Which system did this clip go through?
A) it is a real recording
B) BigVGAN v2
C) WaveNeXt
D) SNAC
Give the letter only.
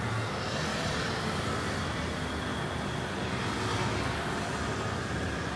A